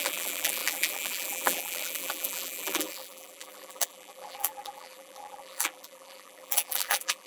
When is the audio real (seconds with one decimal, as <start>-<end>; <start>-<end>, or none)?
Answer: none